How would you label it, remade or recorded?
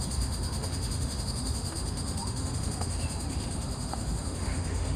remade